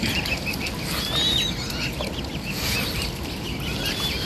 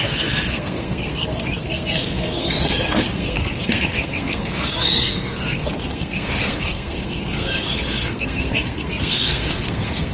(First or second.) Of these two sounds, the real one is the first